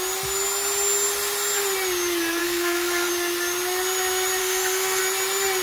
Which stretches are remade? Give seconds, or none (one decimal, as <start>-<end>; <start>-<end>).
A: 2.4-3.1; 4.4-5.0